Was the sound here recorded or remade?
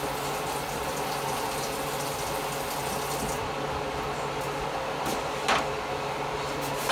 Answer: recorded